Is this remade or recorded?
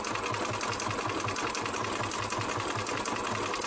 recorded